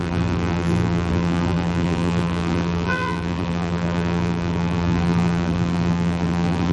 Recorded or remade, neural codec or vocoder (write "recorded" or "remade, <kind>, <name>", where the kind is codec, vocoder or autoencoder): remade, vocoder, BigVGAN v2